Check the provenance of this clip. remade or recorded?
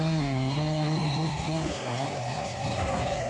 remade